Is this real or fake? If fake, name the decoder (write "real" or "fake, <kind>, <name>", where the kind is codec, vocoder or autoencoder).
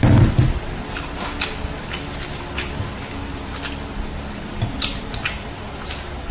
real